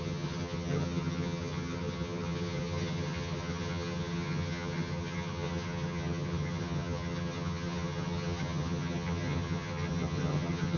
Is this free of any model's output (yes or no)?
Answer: no